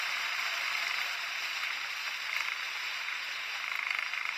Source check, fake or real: fake